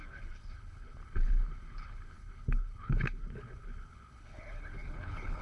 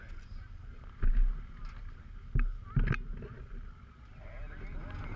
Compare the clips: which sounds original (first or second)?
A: second